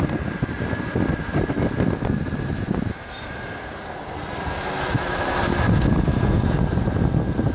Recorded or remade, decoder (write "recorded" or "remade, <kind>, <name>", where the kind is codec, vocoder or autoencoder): recorded